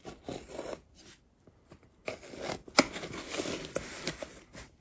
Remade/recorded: recorded